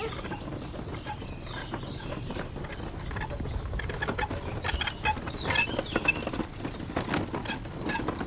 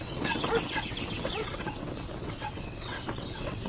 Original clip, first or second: first